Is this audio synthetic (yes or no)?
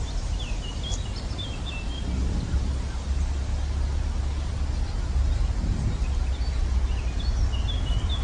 no